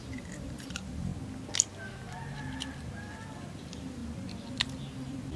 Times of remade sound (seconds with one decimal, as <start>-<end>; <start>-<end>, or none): 0.0-1.1; 3.3-4.0; 4.8-5.4